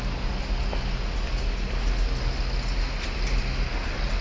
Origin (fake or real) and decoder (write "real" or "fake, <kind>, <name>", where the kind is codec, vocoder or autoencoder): real